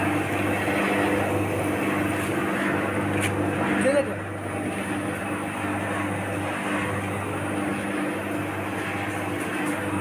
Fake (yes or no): no